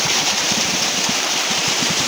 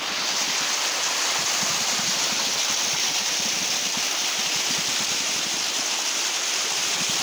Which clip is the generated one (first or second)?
first